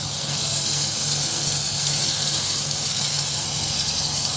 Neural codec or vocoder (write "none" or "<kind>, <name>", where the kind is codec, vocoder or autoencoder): codec, SNAC